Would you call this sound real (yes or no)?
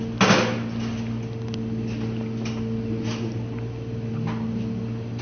yes